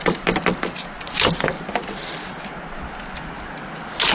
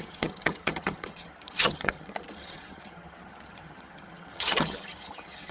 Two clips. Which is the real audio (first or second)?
first